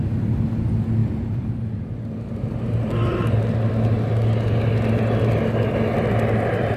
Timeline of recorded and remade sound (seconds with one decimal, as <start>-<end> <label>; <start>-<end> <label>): 0.0-1.0 recorded; 1.0-3.7 remade; 3.7-6.8 recorded